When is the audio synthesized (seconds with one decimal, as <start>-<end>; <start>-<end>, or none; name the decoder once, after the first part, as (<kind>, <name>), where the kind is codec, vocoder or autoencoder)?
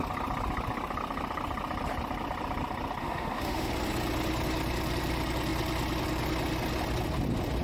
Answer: 3.0-3.7 (autoencoder, DAC-VAE)